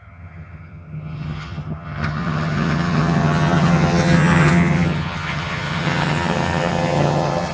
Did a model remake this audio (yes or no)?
yes